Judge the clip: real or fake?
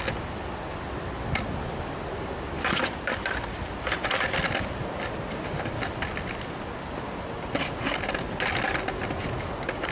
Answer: real